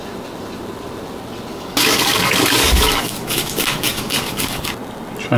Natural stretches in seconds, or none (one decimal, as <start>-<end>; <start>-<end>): 0.0-1.5; 4.7-5.4